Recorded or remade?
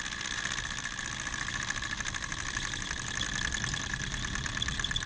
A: recorded